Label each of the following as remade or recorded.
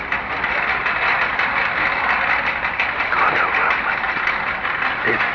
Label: recorded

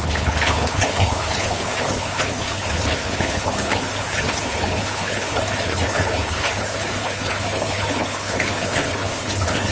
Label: remade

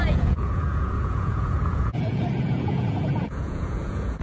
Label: remade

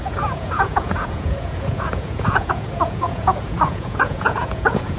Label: remade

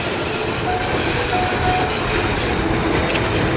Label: recorded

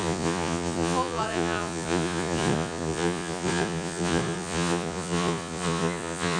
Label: remade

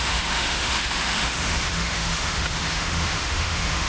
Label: remade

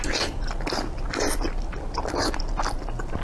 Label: recorded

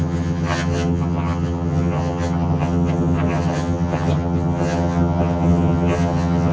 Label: remade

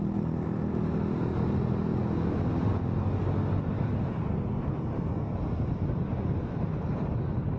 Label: recorded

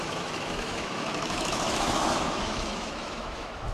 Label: remade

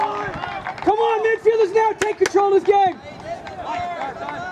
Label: recorded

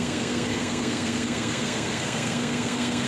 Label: remade